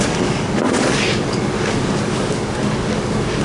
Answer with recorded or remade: remade